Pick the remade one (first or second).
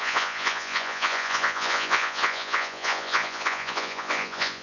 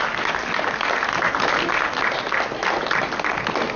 first